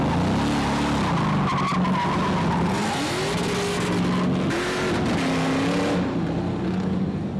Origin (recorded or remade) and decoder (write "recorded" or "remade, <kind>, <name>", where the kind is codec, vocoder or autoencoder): recorded